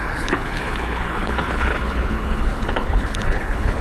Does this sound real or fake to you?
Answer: fake